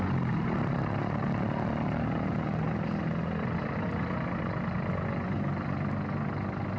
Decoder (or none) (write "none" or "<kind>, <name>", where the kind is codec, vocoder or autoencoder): none